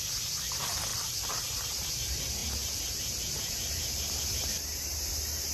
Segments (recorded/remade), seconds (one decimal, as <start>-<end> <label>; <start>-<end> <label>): 0.0-0.9 recorded; 0.9-1.9 remade; 1.9-2.4 recorded; 2.4-4.2 remade; 4.2-5.5 recorded

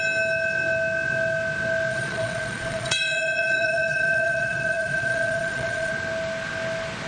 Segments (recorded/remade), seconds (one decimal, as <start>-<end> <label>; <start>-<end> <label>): 0.0-1.9 recorded; 1.9-5.9 remade; 5.9-7.1 recorded

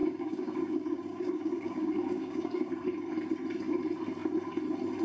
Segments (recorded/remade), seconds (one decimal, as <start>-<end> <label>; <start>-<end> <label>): 0.0-2.7 remade; 2.7-5.0 recorded